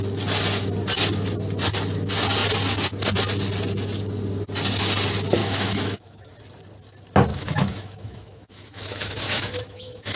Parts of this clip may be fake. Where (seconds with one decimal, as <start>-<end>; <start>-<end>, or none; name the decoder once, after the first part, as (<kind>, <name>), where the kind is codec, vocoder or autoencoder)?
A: 5.4-6.3 (autoencoder, DAC-VAE); 7.3-10.2